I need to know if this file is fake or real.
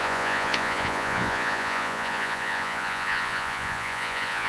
fake